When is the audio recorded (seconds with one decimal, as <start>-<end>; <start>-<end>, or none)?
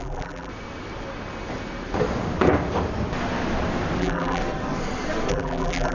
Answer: 0.5-4.0; 4.4-5.3